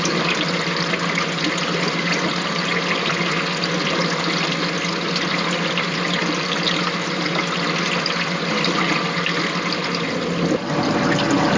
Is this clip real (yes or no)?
yes